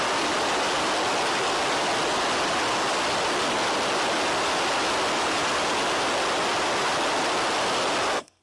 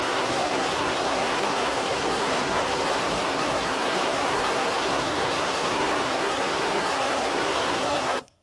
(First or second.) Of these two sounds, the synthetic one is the second